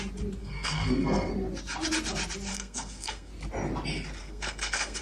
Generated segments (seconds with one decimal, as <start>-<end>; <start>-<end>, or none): 0.4-1.3; 2.5-3.3; 4.2-5.0